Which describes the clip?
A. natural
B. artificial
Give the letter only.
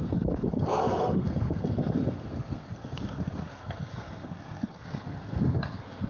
B